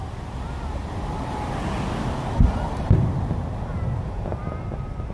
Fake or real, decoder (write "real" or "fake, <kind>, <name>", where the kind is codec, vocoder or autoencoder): real